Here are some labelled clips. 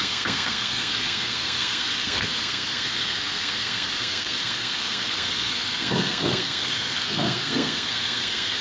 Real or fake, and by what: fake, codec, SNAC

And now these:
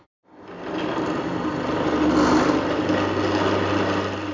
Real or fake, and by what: real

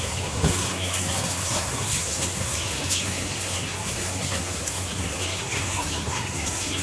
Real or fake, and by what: fake, codec, SNAC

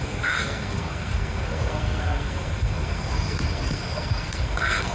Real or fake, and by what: fake, codec, SNAC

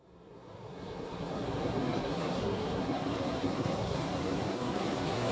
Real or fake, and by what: fake, codec, SNAC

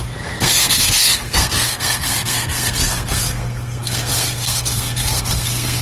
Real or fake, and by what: fake, codec, SNAC